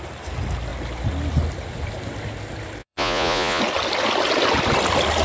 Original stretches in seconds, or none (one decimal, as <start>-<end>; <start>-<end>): 0.0-2.8; 3.6-5.2